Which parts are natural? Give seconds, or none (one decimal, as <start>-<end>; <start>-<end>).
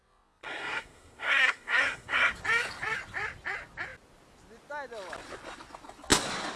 0.0-0.4; 2.3-6.6